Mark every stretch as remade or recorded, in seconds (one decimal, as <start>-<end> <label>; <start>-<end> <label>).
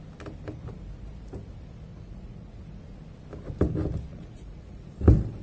0.0-1.9 recorded; 1.9-2.8 remade; 2.8-4.1 recorded; 4.1-4.9 remade; 4.9-5.4 recorded